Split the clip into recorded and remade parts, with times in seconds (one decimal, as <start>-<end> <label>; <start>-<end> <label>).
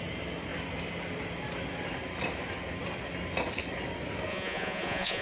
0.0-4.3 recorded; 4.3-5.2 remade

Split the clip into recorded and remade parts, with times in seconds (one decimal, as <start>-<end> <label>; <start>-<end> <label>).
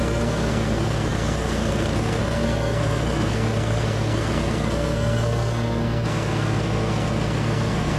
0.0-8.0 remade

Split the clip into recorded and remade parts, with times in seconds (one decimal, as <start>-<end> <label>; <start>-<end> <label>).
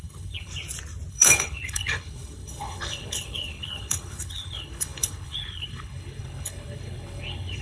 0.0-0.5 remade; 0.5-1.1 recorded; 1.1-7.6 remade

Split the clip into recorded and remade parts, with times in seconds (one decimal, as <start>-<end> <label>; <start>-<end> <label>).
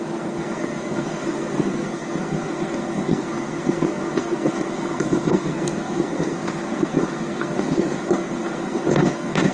0.0-9.5 remade